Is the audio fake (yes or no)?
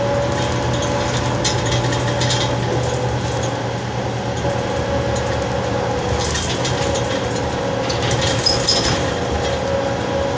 no